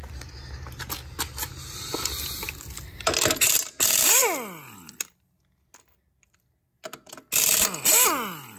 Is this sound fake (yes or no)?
no